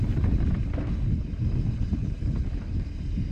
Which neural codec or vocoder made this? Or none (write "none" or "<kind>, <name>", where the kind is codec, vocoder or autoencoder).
none